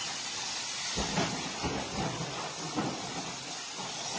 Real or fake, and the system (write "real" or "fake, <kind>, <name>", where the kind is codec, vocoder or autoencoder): real